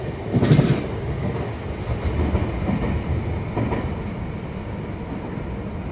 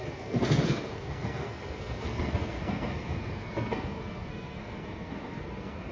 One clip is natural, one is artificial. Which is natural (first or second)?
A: first